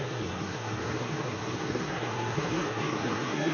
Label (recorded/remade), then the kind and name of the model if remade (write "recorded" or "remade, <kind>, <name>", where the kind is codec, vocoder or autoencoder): remade, codec, SNAC